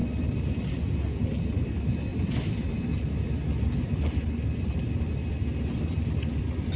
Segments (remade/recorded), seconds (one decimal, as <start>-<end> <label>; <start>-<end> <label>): 0.0-1.7 remade; 1.7-2.1 recorded; 2.1-5.1 remade; 5.1-6.8 recorded